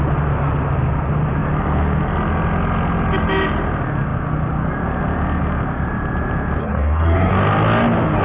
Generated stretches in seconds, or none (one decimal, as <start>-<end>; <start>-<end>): 6.6-7.3